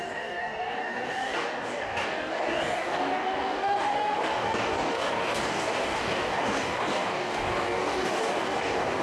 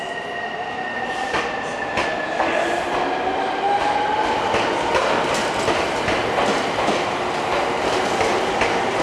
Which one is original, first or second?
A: second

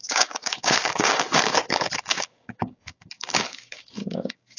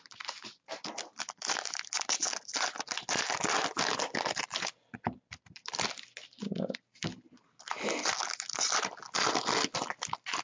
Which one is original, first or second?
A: second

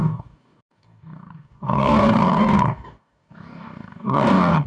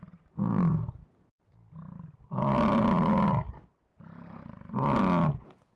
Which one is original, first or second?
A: second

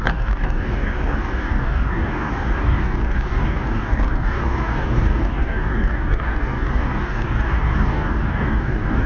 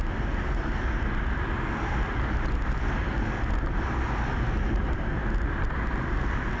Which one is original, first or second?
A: second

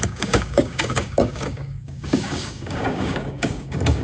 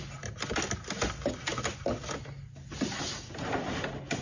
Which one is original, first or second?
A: second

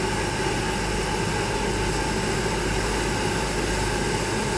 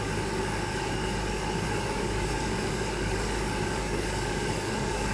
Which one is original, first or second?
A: first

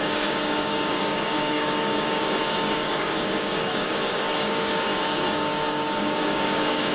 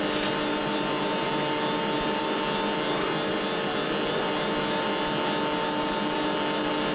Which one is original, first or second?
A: second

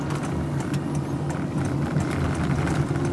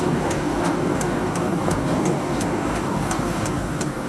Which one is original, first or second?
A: first